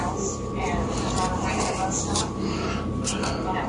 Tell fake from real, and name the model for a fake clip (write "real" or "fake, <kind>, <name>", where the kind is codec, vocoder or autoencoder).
real